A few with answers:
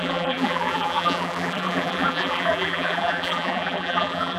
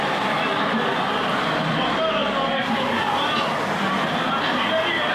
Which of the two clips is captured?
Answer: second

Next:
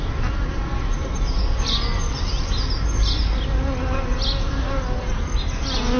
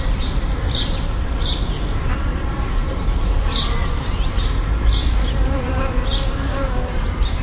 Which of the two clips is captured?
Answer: first